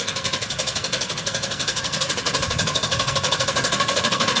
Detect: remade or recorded remade